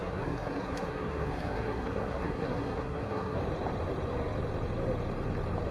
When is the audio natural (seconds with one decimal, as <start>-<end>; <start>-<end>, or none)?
3.4-5.7